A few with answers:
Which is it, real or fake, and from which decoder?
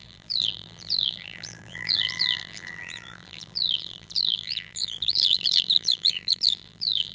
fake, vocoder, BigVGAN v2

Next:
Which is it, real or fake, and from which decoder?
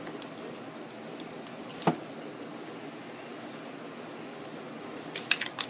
real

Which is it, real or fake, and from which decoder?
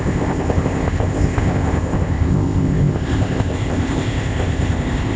fake, codec, ZipCodec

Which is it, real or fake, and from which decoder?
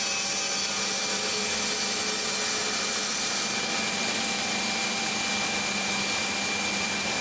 real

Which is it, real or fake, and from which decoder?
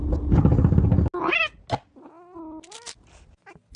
real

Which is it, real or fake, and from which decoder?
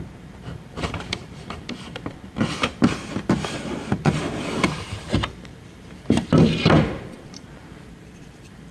fake, vocoder, BigVGAN v2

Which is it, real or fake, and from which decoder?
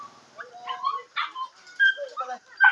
real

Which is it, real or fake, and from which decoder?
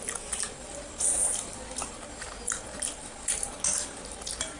real